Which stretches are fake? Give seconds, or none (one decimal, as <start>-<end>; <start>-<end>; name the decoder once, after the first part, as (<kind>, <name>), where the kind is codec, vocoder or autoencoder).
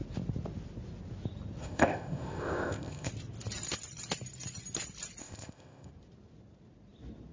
1.6-3.1 (codec, ZipCodec); 5.2-5.9